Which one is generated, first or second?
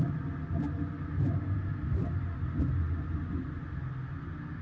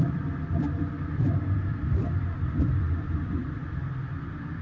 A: second